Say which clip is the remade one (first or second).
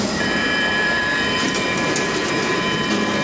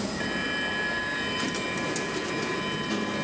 first